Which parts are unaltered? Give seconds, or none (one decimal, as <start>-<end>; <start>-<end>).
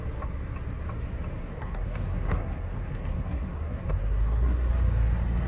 0.0-1.4; 4.7-5.5